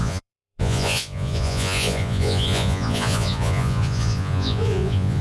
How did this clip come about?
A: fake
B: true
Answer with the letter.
A